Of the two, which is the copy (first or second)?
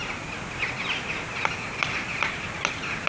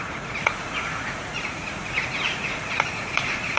second